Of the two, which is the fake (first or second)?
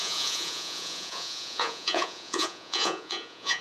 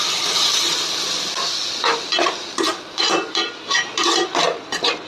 first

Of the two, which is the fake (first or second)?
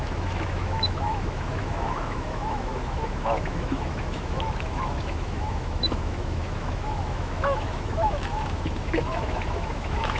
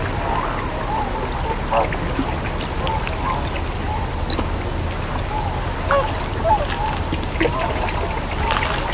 first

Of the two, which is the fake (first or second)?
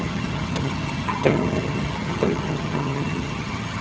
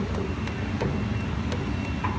first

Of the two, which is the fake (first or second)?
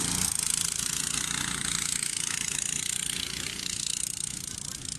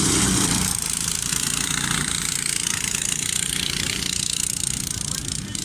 second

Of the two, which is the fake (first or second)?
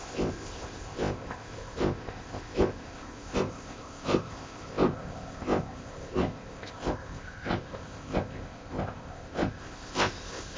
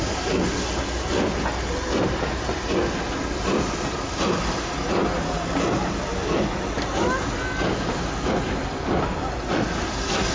first